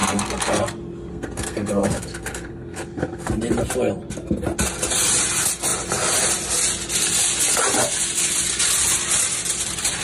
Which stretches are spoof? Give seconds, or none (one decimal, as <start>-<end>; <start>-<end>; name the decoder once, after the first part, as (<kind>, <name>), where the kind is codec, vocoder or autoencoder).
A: 0.0-0.6 (codec, SNAC); 1.1-3.3